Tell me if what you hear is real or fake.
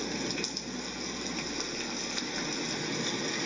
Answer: real